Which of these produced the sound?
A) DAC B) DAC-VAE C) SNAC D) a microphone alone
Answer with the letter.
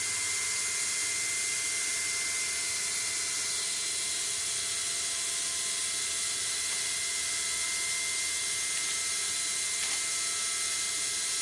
D